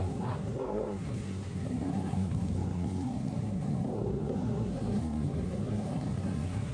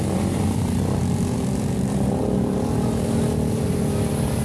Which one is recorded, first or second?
second